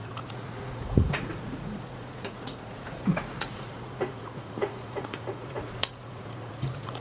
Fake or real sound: fake